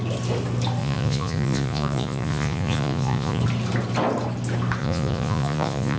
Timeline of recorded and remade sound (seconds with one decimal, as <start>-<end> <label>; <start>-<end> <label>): 0.0-0.8 recorded; 0.8-3.4 remade; 3.4-4.8 recorded; 4.8-6.0 remade